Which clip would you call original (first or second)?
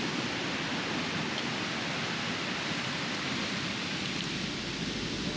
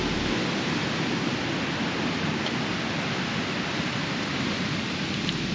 second